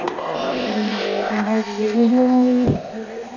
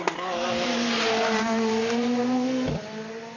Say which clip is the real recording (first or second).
second